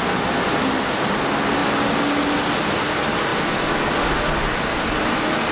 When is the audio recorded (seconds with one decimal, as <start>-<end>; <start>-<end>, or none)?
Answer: 0.0-0.6; 1.2-5.5